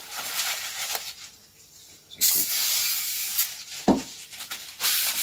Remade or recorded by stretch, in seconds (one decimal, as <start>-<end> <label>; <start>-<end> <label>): 0.0-1.4 remade; 1.4-4.5 recorded; 4.5-5.2 remade